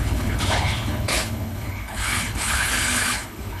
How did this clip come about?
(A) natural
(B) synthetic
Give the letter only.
B